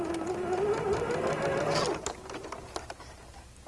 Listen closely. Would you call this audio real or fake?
real